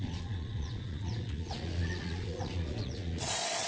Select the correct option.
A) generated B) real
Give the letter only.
A